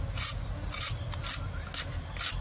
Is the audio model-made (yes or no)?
no